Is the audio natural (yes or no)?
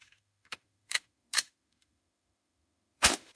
no